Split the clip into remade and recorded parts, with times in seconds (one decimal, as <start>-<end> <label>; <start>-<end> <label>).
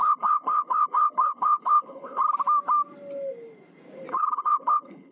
0.0-2.2 remade; 2.2-4.1 recorded; 4.1-5.1 remade